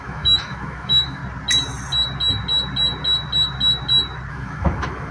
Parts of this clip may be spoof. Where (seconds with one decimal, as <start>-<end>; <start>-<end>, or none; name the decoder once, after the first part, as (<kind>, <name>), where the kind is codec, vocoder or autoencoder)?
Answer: 0.0-1.2 (autoencoder, DAC-VAE); 4.3-5.1